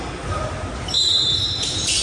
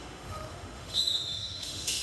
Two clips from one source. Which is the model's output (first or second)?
second